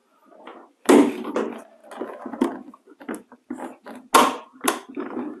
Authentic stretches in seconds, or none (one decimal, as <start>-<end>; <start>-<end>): 0.0-5.4